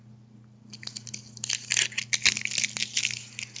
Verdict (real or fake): real